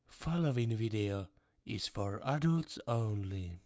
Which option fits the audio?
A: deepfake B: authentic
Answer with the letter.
A